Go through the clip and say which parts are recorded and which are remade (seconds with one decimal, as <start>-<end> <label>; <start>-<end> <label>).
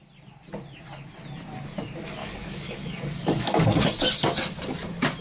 0.0-2.2 recorded; 2.2-3.8 remade; 3.8-5.2 recorded